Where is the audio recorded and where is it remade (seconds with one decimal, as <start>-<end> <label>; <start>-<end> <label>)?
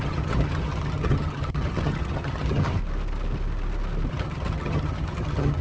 0.0-2.8 remade; 2.8-4.1 recorded; 4.1-5.6 remade